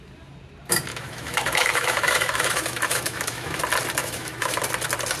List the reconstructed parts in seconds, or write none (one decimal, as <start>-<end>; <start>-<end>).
0.9-3.6; 4.0-4.6